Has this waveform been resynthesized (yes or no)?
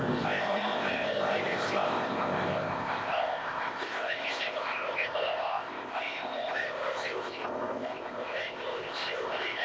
yes